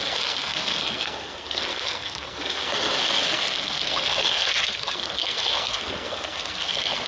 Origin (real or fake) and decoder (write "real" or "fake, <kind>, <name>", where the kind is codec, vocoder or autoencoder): fake, codec, SNAC